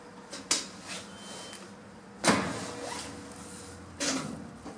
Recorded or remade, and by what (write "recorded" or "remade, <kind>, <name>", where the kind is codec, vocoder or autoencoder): recorded